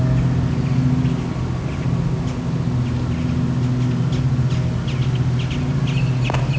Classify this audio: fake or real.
real